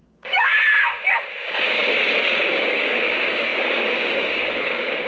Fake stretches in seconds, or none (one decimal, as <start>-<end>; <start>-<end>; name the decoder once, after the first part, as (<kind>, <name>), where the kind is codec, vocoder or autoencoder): 0.0-0.5 (codec, DAC); 1.4-1.8; 2.5-5.1